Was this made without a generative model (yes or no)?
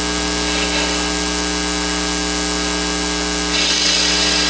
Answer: yes